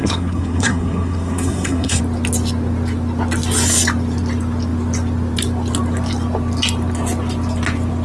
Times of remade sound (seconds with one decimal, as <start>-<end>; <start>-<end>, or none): 0.0-2.0